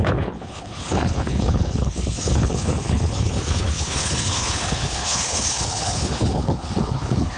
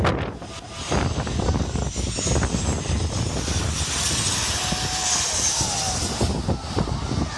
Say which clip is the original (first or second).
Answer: second